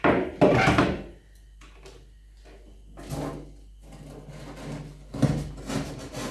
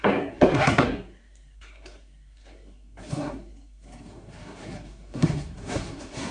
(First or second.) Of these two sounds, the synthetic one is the second